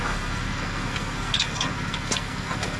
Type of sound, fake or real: fake